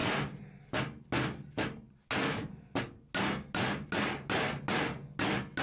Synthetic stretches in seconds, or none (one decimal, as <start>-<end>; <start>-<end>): none